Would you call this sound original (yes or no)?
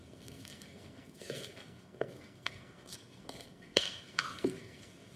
no